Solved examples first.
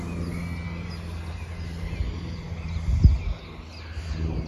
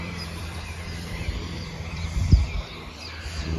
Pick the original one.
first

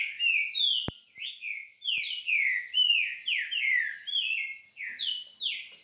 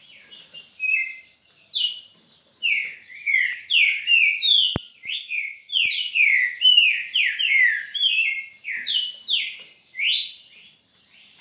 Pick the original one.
first